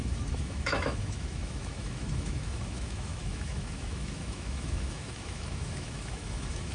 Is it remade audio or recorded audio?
remade